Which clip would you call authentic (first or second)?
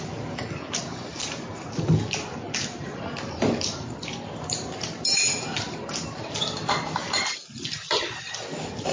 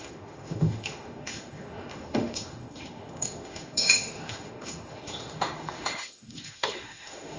first